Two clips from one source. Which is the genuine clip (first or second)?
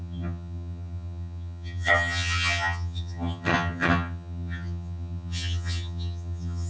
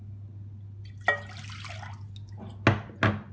second